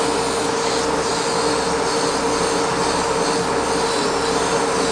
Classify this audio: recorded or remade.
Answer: recorded